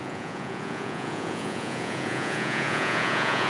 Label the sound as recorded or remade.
remade